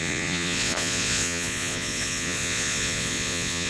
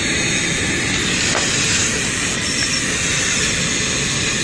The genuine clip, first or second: second